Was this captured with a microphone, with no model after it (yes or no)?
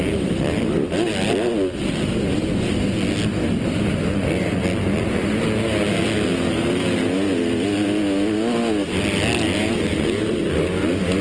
yes